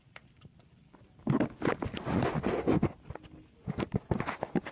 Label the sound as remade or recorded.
recorded